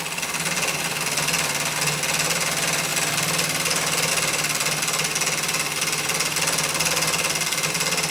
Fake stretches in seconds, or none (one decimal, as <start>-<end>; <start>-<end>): none